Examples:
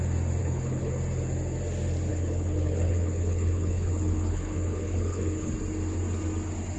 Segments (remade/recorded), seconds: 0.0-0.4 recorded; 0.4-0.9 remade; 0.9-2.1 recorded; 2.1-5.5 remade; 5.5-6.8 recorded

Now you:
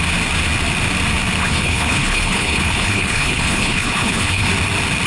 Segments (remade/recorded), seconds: 0.0-1.4 recorded; 1.4-4.5 remade; 4.5-5.1 recorded